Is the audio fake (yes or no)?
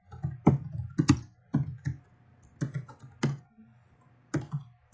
no